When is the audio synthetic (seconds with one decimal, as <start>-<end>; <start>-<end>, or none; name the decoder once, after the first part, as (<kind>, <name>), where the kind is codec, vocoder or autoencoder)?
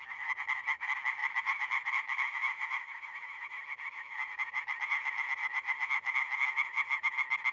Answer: 0.0-7.5 (autoencoder, DAC-VAE)